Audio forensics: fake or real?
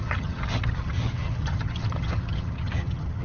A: fake